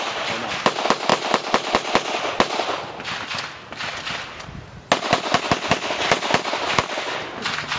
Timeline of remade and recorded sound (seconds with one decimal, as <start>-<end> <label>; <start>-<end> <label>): 0.0-7.8 recorded